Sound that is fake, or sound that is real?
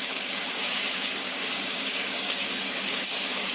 fake